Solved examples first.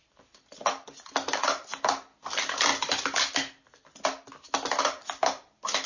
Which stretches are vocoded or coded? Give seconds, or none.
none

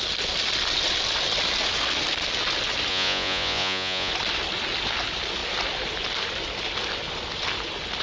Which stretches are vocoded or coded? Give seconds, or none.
2.9-4.1 (vocoder, Vocos)

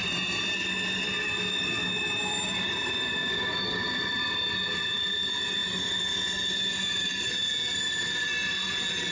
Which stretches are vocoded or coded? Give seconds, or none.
none